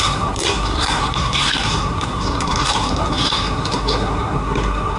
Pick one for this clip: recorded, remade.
remade